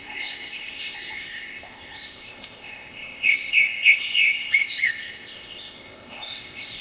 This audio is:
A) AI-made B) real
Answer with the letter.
A